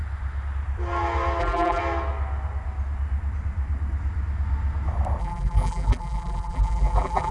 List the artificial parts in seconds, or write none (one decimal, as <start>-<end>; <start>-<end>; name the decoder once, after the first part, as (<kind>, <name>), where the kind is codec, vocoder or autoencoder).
1.4-1.8 (vocoder, BigVGAN v2); 5.2-7.3